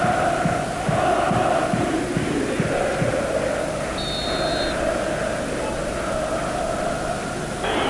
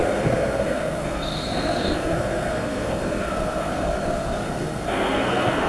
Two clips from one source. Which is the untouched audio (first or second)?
first